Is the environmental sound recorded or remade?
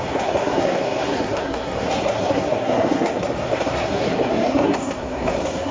remade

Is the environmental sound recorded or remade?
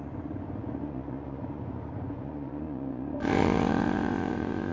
remade